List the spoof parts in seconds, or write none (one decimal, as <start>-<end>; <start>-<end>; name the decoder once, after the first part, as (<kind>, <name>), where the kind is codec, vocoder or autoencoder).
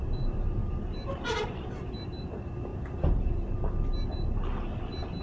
0.6-2.2 (vocoder, BigVGAN v2); 2.7-3.6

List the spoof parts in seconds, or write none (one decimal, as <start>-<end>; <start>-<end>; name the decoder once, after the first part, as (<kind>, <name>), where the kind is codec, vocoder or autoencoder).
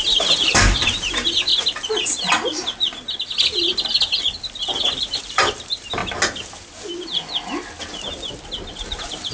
0.0-1.5 (vocoder, BigVGAN v2); 5.2-6.0; 8.7-9.3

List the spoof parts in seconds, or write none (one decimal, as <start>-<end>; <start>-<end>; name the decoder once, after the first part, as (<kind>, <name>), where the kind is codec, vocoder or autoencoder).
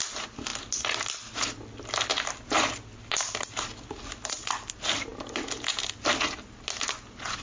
none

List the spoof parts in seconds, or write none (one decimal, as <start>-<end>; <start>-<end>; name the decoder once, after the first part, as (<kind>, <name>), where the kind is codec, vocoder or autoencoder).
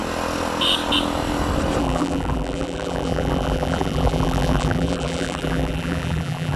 1.8-6.6 (vocoder, BigVGAN v2)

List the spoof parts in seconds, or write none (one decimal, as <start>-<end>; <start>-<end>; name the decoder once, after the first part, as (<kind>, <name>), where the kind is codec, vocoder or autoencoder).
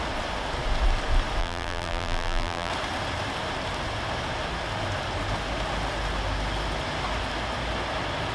1.4-2.7 (vocoder, BigVGAN v2)